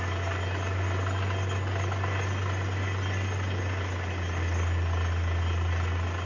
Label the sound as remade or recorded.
recorded